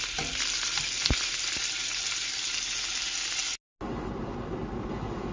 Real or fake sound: real